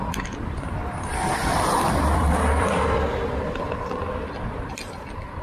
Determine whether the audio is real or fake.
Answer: fake